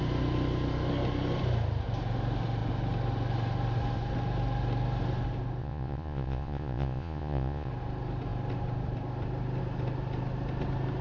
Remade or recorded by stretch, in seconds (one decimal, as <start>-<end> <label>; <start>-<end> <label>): 0.0-5.6 recorded; 5.6-7.7 remade; 7.7-11.0 recorded